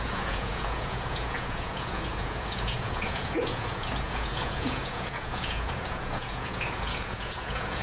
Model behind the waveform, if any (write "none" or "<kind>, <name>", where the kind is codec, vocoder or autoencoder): vocoder, Vocos